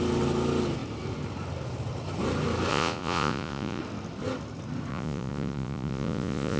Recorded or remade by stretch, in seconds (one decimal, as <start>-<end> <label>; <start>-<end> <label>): 0.0-2.7 recorded; 2.7-3.8 remade; 3.8-4.9 recorded; 4.9-6.6 remade